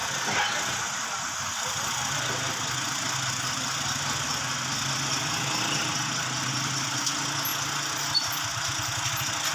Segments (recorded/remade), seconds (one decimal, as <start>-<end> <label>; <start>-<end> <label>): 0.0-9.5 recorded